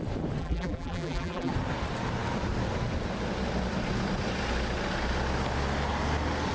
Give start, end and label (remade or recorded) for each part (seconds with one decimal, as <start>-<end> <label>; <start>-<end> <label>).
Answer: 0.0-0.4 recorded; 0.4-1.5 remade; 1.5-6.5 recorded